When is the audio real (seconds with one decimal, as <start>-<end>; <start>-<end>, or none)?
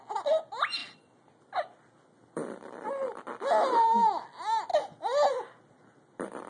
0.0-0.8; 2.9-6.5